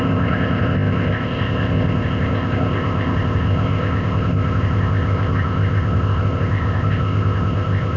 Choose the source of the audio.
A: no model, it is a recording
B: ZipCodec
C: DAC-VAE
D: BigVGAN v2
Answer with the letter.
B